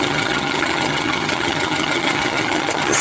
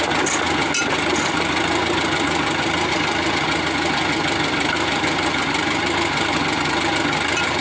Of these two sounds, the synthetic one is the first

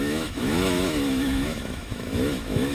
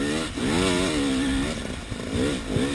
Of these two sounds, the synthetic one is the first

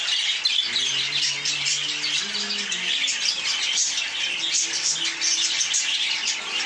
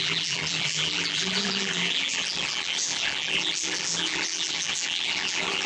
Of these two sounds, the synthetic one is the second